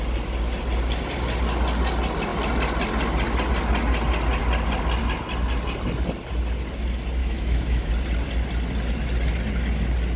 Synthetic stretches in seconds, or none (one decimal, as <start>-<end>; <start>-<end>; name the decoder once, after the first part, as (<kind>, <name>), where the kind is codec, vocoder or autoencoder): 7.2-7.9 (autoencoder, DAC-VAE)